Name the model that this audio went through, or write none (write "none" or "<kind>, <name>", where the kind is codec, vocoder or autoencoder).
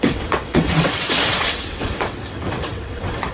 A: vocoder, WaveNeXt